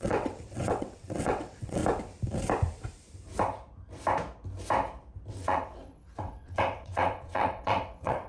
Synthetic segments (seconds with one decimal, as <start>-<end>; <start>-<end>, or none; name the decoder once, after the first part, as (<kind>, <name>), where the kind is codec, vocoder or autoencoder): 0.0-1.8 (vocoder, WaveNeXt); 5.3-8.3